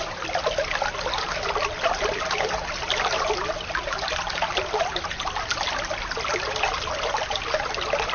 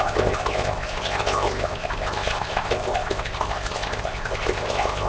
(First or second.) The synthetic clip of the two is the second